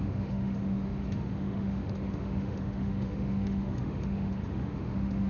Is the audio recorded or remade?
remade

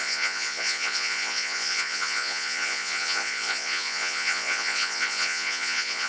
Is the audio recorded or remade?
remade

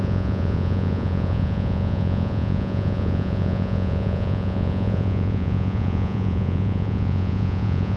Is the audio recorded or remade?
remade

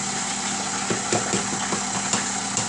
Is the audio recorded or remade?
recorded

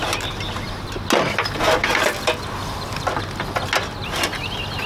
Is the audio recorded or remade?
recorded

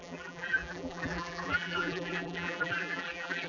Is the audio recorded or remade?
remade